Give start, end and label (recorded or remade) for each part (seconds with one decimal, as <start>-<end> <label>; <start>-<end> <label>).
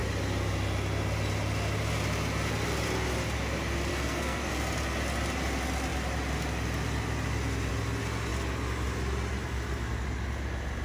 0.0-3.9 recorded; 3.9-4.5 remade; 4.5-10.8 recorded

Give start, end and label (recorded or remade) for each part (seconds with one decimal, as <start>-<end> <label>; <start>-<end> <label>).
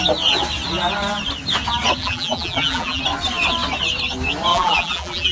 0.0-2.0 recorded; 2.0-3.0 remade; 3.0-4.5 recorded; 4.5-5.3 remade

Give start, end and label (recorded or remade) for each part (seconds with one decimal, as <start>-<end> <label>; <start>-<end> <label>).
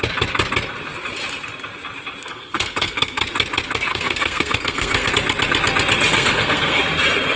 0.0-2.2 recorded; 2.2-3.2 remade; 3.2-3.9 recorded; 3.9-5.1 remade; 5.1-6.1 recorded; 6.1-6.8 remade; 6.8-7.4 recorded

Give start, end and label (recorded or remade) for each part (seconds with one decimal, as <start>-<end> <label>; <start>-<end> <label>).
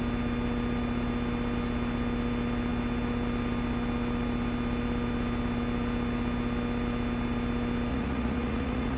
0.0-7.9 recorded; 7.9-9.0 remade